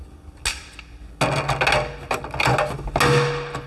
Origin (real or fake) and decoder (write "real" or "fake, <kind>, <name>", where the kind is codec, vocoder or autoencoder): real